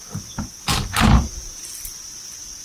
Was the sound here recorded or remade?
recorded